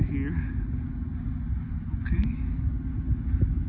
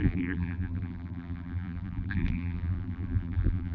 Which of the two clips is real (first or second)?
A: first